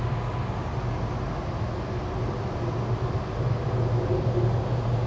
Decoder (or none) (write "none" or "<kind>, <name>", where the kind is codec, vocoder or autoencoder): none